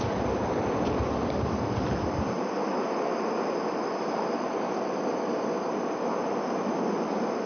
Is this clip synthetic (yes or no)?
no